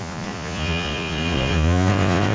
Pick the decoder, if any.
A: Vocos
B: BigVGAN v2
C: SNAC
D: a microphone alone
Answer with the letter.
A